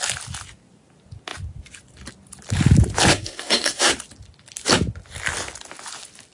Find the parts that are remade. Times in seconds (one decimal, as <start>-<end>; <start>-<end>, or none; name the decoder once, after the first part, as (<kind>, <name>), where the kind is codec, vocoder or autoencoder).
3.1-3.9 (codec, SNAC)